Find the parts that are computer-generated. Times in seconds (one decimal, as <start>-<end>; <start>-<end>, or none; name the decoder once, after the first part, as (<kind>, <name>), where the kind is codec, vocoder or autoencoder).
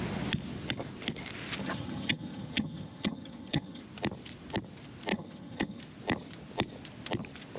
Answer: 1.6-3.8 (vocoder, HiFi-GAN); 5.1-5.8